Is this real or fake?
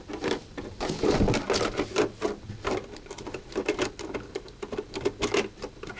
real